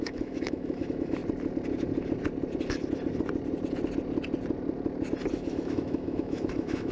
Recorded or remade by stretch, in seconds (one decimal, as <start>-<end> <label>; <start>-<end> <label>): 0.0-1.2 remade; 1.2-5.3 recorded; 5.3-6.9 remade